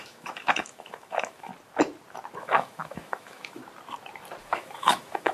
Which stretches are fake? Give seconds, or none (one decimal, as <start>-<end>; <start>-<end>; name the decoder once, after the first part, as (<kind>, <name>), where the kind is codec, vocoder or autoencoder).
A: 0.0-1.5 (autoencoder, DAC-VAE); 2.4-3.6; 4.4-5.3

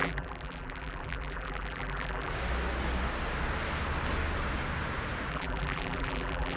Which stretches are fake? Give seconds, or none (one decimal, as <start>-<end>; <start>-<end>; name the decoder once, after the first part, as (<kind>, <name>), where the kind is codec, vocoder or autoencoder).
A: 0.0-2.3 (vocoder, BigVGAN v2); 5.3-6.6

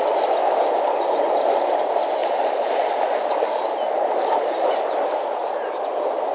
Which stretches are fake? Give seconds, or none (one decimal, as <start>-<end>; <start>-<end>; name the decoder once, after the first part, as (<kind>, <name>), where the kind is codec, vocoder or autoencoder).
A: 2.2-2.8 (vocoder, BigVGAN v2)

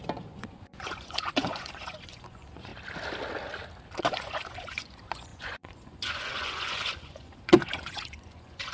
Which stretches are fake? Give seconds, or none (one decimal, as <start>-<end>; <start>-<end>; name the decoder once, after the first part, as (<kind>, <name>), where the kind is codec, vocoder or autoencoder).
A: 0.0-2.7 (vocoder, Vocos); 4.0-8.7

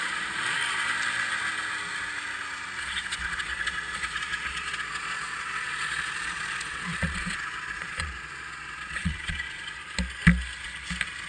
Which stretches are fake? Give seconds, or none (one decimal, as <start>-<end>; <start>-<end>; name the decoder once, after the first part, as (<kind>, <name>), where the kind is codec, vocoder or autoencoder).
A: 0.0-0.6 (vocoder, Vocos); 2.8-9.8

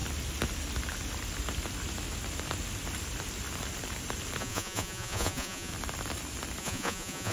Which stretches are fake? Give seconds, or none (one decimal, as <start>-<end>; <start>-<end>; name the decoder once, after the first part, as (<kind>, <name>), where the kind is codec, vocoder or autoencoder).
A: 4.4-5.7 (vocoder, Vocos); 6.6-7.3

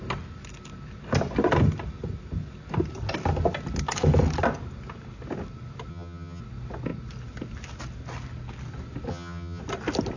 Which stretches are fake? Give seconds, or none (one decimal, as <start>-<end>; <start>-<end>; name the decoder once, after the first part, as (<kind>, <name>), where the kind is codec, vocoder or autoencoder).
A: 5.9-6.4 (vocoder, HiFi-GAN); 9.1-9.6